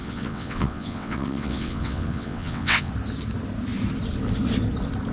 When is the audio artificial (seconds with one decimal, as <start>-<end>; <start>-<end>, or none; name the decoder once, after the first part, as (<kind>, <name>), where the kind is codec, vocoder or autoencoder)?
0.0-2.9 (vocoder, WaveNeXt)